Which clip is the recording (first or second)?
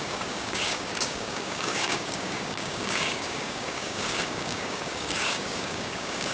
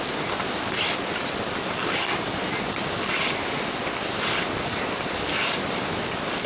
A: second